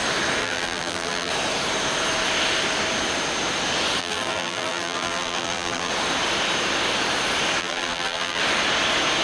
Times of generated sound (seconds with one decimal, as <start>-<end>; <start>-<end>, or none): 0.4-1.3; 4.0-5.9; 7.6-8.4